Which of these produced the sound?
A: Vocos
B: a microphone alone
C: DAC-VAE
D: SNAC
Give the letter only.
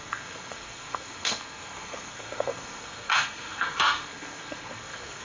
D